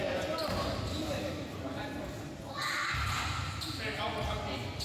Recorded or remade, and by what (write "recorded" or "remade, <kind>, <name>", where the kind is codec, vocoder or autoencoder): recorded